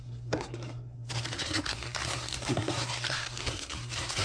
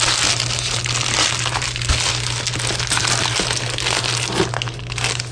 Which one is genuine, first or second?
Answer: second